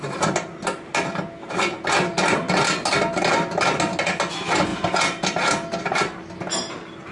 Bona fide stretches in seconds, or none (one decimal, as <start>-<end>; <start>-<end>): 0.0-7.1

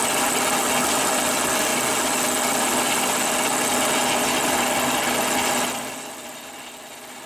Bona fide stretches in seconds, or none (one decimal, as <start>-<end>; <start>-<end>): 0.0-7.3

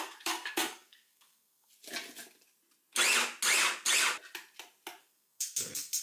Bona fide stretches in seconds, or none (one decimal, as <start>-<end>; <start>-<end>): 1.7-5.0

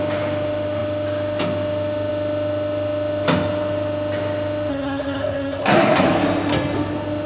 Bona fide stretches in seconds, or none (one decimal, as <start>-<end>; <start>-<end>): 0.0-4.7; 6.0-7.3

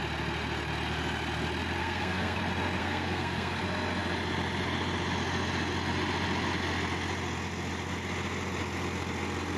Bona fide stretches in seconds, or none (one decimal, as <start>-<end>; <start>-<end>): 0.0-1.8; 2.4-2.8; 3.6-9.6

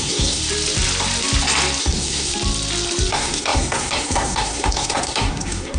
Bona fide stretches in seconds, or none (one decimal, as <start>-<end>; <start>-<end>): 0.4-1.8; 2.3-3.1

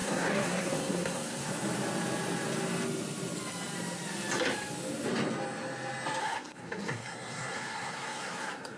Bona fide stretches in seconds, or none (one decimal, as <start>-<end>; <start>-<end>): 1.5-6.2